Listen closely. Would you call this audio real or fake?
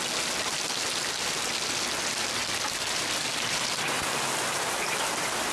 real